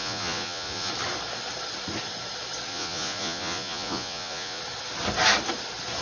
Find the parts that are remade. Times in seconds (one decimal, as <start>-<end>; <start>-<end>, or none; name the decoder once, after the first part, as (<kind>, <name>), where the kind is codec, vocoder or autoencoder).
0.0-0.9 (vocoder, Vocos); 2.7-4.6